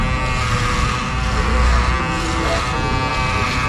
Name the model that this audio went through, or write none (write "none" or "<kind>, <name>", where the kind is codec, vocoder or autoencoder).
none